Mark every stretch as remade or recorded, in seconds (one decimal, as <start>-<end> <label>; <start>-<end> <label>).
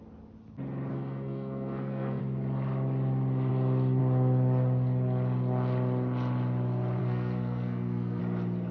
0.0-0.9 recorded; 0.9-2.2 remade; 2.2-7.0 recorded; 7.0-8.2 remade; 8.2-8.7 recorded